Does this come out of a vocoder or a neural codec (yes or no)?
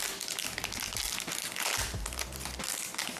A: no